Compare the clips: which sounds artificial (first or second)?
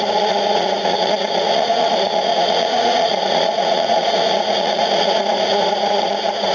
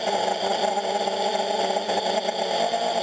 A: first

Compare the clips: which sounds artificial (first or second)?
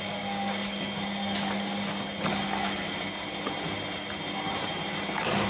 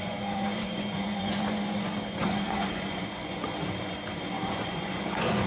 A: second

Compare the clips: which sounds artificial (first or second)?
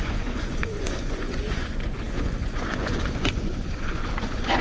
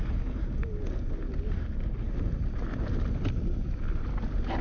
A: first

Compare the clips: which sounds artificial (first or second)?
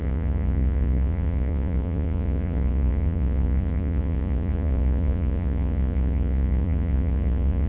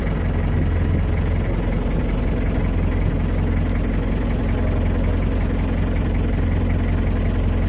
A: first